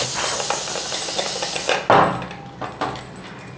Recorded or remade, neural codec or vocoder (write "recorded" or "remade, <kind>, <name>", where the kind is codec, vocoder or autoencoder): recorded